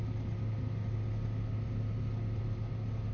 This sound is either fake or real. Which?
real